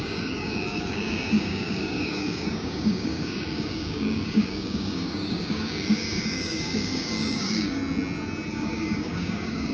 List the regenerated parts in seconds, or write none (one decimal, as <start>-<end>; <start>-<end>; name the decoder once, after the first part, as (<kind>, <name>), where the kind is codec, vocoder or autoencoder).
0.0-7.8 (codec, DAC); 8.5-9.7